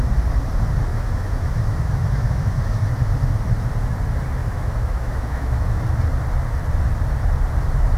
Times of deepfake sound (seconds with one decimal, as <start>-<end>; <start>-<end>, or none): 0.9-2.9; 4.4-5.8